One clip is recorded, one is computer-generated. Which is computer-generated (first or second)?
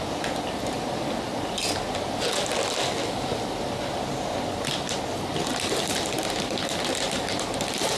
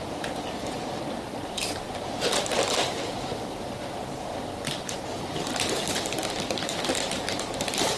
second